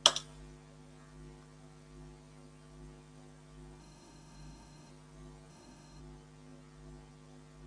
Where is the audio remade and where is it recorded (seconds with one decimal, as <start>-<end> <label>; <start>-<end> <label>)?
0.0-3.8 recorded; 3.8-4.9 remade; 4.9-5.5 recorded; 5.5-6.0 remade; 6.0-7.7 recorded